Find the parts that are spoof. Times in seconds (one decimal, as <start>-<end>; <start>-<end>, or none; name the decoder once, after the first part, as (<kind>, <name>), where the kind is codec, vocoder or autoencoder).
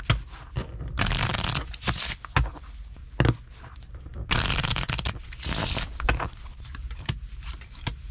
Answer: none